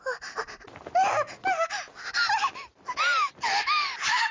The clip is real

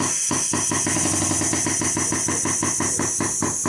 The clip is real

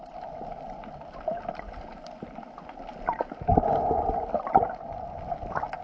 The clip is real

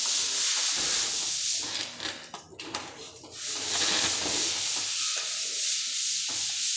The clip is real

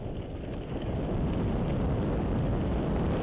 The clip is real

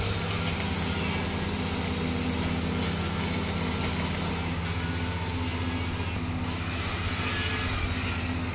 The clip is real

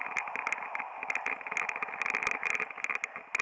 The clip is real